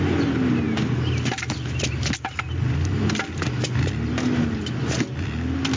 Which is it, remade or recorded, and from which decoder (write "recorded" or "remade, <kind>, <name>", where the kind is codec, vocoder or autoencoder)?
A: recorded